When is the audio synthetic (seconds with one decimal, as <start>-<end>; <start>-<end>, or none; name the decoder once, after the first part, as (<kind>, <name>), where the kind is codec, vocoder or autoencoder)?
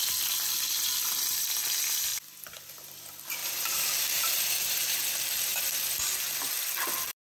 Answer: 3.4-5.1 (vocoder, BigVGAN v2)